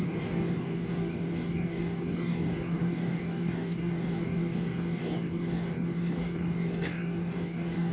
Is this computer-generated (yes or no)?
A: yes